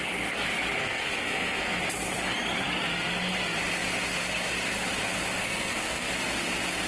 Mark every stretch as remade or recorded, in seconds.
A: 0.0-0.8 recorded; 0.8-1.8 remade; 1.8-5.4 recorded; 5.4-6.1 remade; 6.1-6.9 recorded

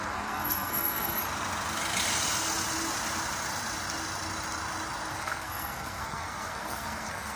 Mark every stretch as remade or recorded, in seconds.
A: 0.0-1.2 remade; 1.2-5.1 recorded; 5.1-7.4 remade

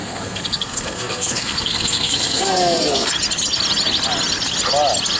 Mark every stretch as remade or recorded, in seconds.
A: 0.0-3.1 remade; 3.1-5.2 recorded

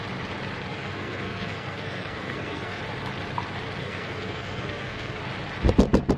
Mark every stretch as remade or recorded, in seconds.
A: 0.0-0.7 recorded; 0.7-2.8 remade; 2.8-3.8 recorded; 3.8-5.2 remade; 5.2-6.2 recorded